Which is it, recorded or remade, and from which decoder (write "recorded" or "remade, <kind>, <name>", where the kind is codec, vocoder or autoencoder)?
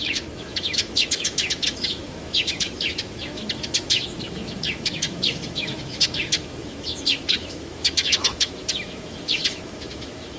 remade, autoencoder, DAC-VAE